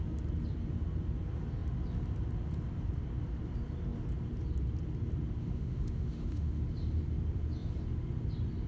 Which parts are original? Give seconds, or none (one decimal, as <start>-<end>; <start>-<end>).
0.0-5.4; 6.6-8.7